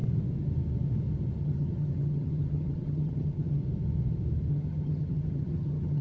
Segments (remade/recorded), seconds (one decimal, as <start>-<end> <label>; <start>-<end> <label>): 0.0-1.4 recorded; 1.4-3.6 remade; 3.6-4.5 recorded; 4.5-6.0 remade